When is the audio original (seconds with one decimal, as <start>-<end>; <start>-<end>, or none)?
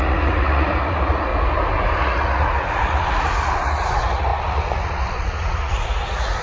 1.3-2.0